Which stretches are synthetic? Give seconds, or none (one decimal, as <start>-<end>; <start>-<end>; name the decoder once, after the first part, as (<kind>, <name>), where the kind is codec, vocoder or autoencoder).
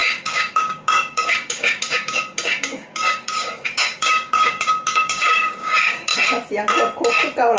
0.0-6.1 (codec, DAC)